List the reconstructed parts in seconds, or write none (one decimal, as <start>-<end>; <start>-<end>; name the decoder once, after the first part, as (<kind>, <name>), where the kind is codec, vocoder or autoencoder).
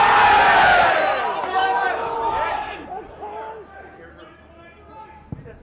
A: none